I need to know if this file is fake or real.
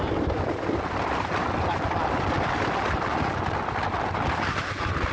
real